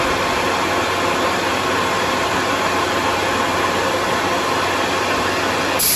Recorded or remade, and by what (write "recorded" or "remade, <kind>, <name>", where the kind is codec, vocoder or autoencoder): recorded